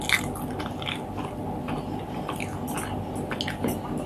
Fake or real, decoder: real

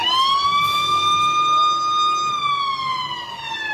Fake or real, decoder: real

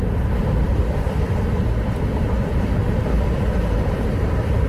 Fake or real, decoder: fake, vocoder, BigVGAN v2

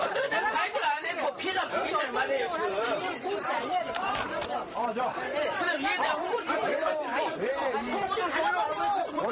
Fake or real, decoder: fake, vocoder, BigVGAN v2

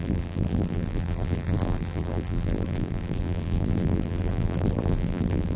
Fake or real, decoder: fake, vocoder, BigVGAN v2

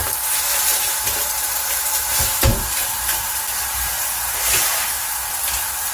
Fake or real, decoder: fake, vocoder, BigVGAN v2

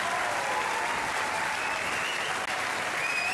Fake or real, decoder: real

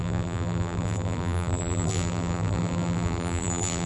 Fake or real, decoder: fake, vocoder, BigVGAN v2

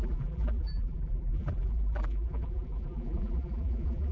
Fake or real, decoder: fake, vocoder, BigVGAN v2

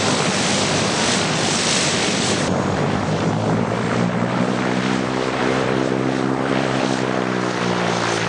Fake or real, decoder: fake, vocoder, BigVGAN v2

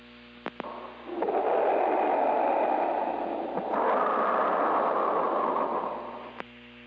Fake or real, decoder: real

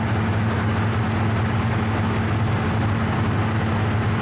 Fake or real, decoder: real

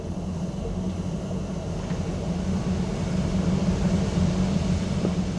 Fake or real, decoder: real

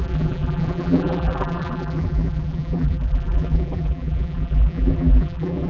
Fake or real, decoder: fake, vocoder, BigVGAN v2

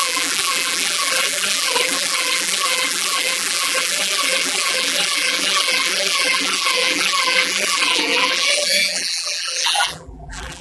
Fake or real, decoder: fake, vocoder, BigVGAN v2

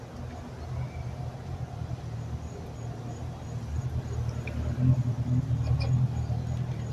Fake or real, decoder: real